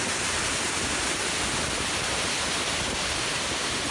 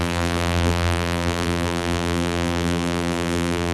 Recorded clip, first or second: first